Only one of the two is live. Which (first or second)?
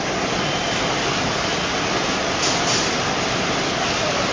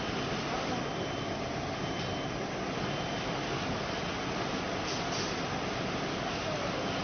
second